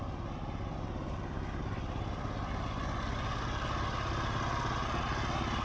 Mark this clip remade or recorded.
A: recorded